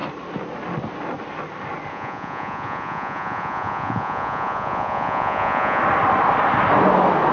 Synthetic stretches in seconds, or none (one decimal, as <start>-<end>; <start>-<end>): 1.9-5.8